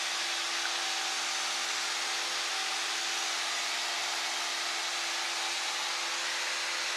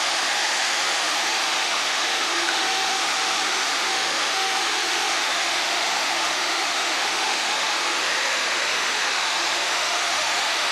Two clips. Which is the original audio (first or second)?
first